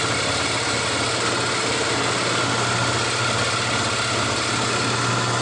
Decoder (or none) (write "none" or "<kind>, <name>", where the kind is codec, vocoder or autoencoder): none